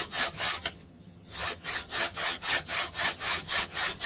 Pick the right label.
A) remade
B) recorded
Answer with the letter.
A